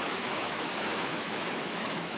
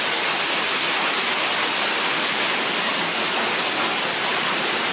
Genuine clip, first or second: second